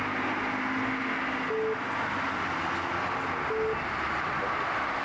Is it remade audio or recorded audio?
recorded